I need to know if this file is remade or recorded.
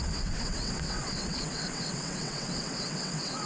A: remade